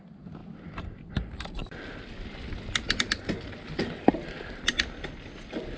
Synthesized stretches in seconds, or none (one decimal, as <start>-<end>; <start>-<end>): none